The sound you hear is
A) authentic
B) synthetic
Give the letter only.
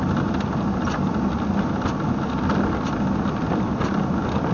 A